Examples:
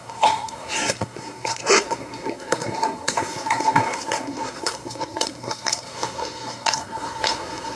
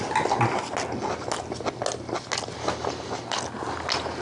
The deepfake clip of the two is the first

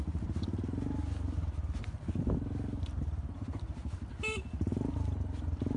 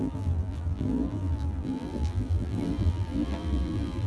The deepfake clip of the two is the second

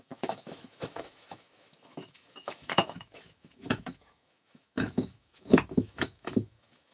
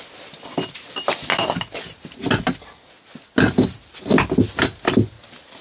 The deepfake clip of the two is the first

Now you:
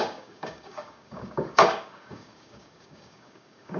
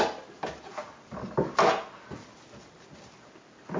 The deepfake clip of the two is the first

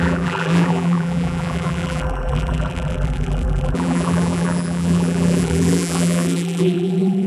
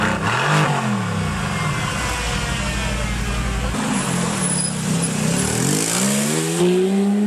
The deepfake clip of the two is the first